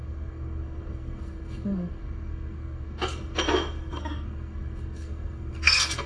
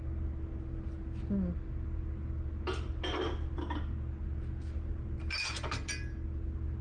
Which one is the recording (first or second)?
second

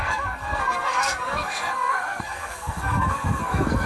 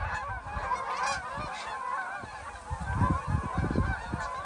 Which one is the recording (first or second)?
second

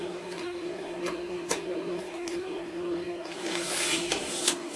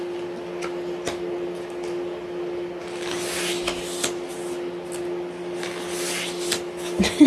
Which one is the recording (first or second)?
second